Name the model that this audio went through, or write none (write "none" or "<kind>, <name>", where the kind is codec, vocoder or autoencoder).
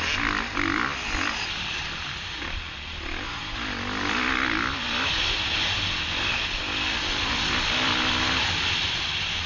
none